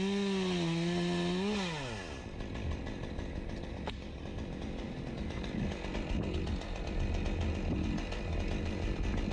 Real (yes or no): yes